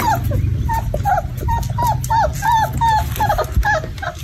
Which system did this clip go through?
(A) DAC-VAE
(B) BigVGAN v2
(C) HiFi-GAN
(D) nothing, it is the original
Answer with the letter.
D